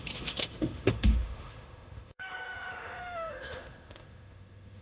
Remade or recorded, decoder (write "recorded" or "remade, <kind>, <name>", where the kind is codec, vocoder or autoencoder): remade, autoencoder, DAC-VAE